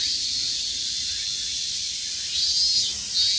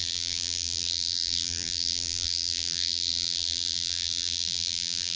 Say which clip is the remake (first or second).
second